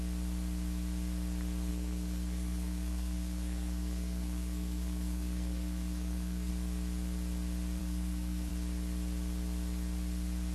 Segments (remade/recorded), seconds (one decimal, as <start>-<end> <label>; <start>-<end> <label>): 0.0-1.7 recorded; 1.7-6.5 remade; 6.5-7.8 recorded; 7.8-8.5 remade; 8.5-10.5 recorded